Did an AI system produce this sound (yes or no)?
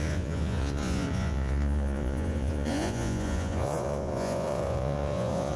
yes